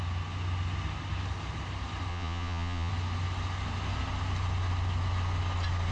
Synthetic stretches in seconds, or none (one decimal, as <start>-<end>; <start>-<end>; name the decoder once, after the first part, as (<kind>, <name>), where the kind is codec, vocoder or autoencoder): 2.1-2.9 (vocoder, Vocos)